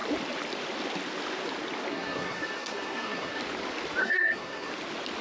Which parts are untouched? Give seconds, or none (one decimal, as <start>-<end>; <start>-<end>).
0.0-1.9; 3.4-4.0; 4.7-5.2